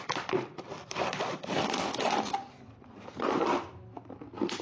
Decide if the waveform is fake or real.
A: fake